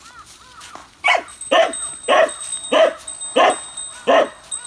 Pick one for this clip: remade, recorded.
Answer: recorded